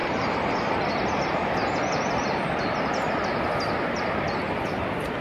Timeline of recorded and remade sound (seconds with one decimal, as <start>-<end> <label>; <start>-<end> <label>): 0.0-5.2 recorded